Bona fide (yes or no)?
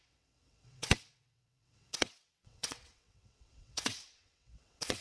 no